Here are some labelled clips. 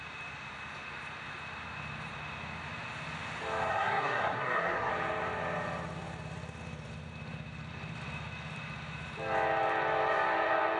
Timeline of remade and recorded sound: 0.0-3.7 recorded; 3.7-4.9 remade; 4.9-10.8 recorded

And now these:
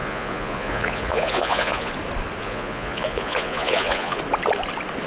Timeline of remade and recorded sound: 0.0-1.9 remade; 1.9-2.4 recorded; 2.4-4.2 remade; 4.2-5.1 recorded

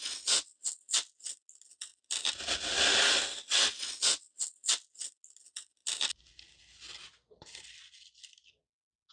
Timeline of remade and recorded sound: 0.0-9.1 recorded